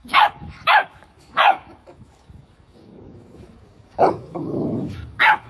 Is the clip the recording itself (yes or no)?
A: no